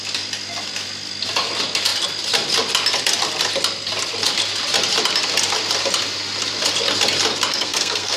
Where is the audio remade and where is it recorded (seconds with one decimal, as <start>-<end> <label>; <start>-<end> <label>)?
0.0-7.5 recorded; 7.5-8.2 remade